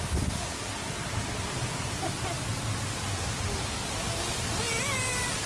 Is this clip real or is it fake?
real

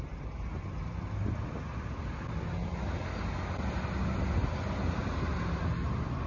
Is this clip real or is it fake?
real